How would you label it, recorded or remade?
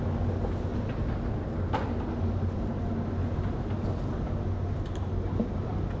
recorded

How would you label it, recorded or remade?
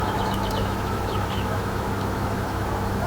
remade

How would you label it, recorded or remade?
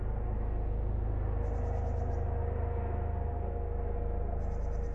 recorded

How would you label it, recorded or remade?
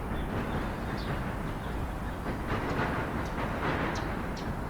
recorded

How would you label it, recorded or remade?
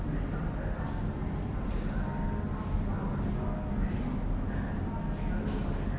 recorded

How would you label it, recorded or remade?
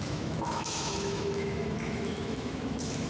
remade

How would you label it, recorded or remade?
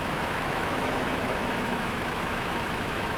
remade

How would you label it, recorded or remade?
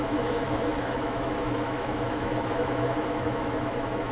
remade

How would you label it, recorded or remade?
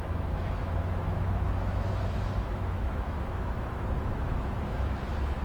remade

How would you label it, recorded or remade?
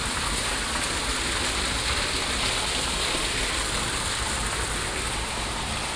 recorded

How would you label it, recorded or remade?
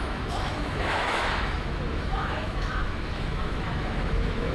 remade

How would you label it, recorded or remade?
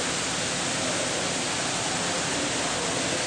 recorded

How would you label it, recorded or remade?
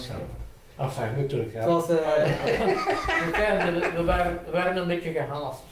remade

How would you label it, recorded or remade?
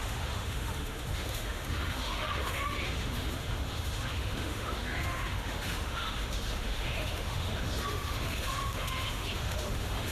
remade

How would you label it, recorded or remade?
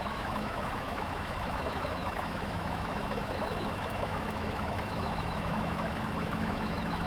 remade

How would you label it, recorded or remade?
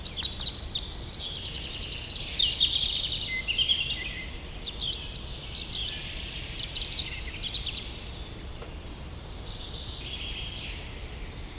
recorded